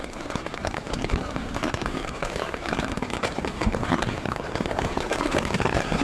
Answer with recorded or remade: remade